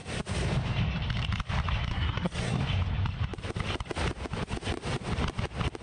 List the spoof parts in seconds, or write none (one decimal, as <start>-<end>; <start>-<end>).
1.9-2.6